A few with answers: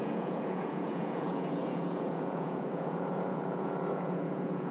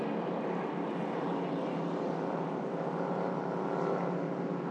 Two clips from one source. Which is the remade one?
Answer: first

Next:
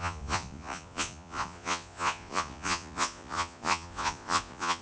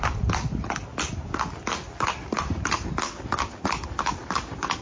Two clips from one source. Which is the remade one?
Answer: first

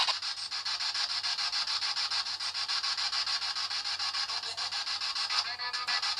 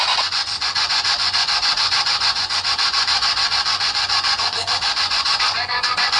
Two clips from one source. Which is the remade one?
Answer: second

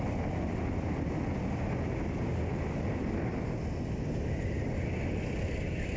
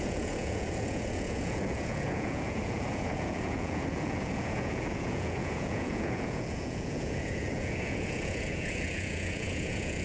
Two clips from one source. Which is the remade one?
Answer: second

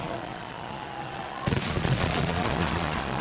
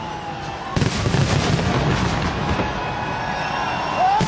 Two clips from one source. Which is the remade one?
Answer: first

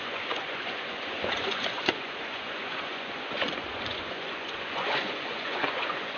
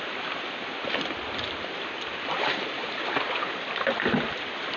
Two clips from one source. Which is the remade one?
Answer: first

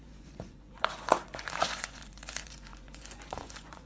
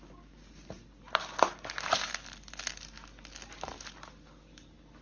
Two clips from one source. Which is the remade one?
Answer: first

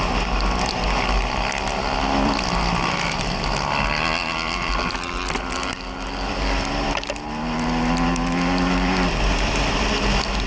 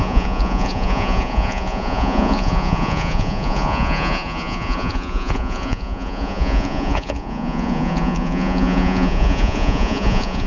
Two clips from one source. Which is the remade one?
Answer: second